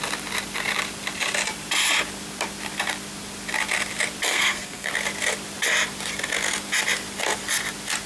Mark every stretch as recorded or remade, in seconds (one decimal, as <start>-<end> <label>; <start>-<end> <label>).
0.0-4.3 recorded; 4.3-4.9 remade; 4.9-8.1 recorded